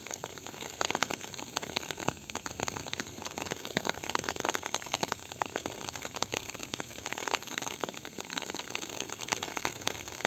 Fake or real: fake